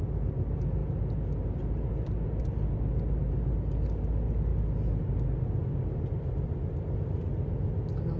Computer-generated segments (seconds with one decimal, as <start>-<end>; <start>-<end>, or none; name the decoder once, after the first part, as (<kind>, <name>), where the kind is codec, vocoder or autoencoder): none